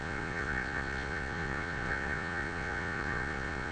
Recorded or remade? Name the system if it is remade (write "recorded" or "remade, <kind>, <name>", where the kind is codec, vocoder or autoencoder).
remade, vocoder, Vocos